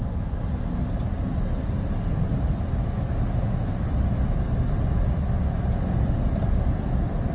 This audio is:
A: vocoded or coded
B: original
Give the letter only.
B